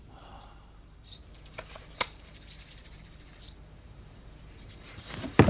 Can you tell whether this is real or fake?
fake